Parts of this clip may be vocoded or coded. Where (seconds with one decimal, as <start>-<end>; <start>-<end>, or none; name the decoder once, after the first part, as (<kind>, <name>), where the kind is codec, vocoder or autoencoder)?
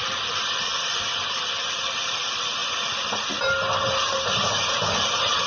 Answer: none